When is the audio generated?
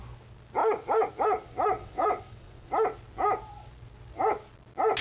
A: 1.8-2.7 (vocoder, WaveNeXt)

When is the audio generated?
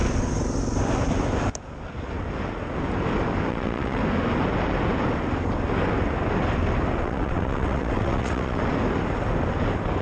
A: 3.5-4.0 (vocoder, WaveNeXt); 7.0-8.6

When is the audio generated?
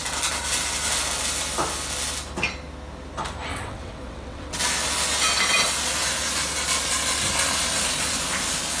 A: 3.5-4.6 (vocoder, WaveNeXt)